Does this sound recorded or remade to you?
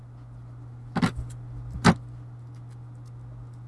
recorded